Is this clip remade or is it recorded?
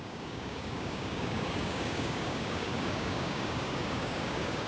remade